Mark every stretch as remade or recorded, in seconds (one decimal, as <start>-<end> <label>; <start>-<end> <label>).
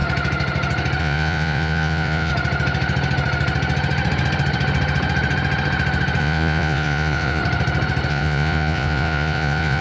0.0-1.0 recorded; 1.0-2.3 remade; 2.3-6.2 recorded; 6.2-7.4 remade; 7.4-8.1 recorded; 8.1-9.8 remade